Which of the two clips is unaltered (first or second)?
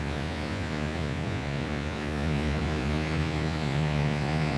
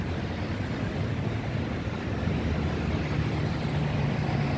second